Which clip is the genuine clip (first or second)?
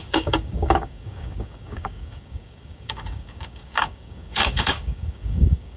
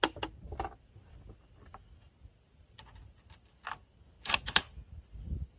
second